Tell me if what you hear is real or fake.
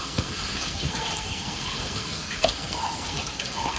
fake